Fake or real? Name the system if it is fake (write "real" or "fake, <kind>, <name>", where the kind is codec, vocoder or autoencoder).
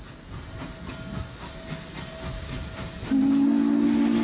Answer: real